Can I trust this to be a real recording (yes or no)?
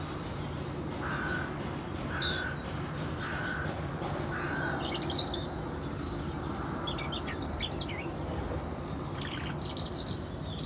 yes